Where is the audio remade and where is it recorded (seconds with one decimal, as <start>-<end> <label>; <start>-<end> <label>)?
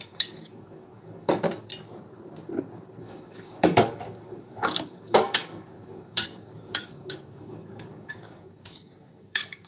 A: 0.0-1.7 remade; 1.7-3.0 recorded; 3.0-9.7 remade